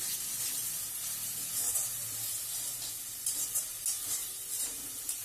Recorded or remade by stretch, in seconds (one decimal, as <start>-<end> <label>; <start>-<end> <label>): 0.0-4.2 recorded; 4.2-4.8 remade; 4.8-5.2 recorded